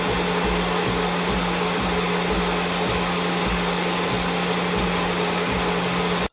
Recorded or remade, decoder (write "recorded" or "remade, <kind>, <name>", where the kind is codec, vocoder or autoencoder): recorded